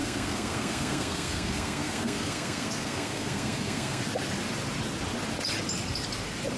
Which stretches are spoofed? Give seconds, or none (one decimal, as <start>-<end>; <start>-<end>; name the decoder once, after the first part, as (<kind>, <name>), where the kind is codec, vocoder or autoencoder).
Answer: 0.0-4.0 (codec, SNAC)